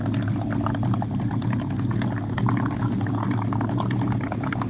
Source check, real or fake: real